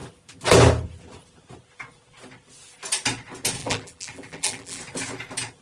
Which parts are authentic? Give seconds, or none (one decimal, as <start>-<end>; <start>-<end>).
0.0-3.6; 4.8-5.6